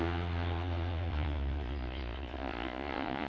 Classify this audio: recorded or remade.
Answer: remade